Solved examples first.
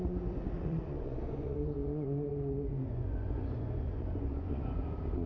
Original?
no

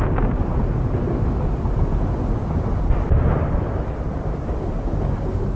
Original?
yes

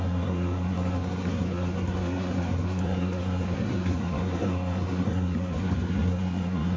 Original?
no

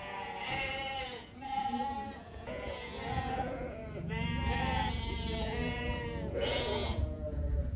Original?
no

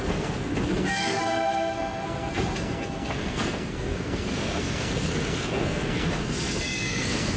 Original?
no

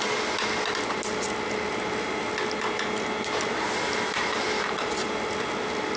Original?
yes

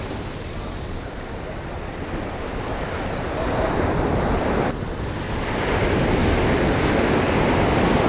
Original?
yes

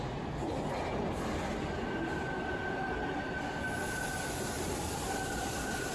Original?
yes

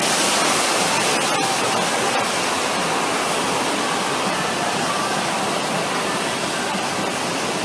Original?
yes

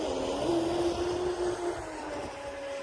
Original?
yes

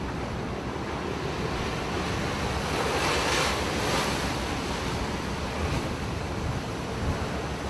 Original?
yes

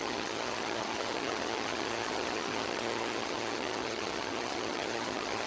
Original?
no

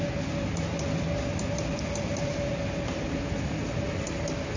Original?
yes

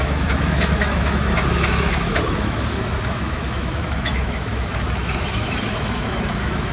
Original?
no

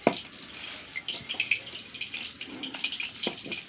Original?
yes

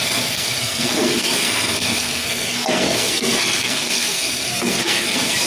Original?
no